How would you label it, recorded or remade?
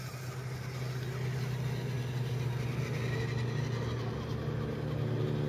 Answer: recorded